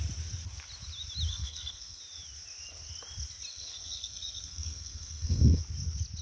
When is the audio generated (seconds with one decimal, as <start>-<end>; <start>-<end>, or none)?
1.3-2.0; 3.5-5.6